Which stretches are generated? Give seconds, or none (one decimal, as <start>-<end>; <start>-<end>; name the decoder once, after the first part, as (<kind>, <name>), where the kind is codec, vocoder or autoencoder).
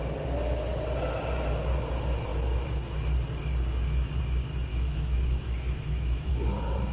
4.7-6.3 (autoencoder, DAC-VAE)